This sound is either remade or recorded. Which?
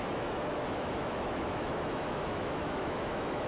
remade